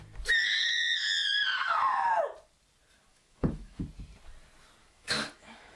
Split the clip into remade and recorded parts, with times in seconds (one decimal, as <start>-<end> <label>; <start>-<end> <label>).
0.0-3.1 recorded; 3.1-3.8 remade; 3.8-4.8 recorded; 4.8-5.8 remade